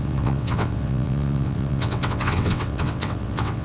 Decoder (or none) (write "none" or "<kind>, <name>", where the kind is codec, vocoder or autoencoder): vocoder, WaveNeXt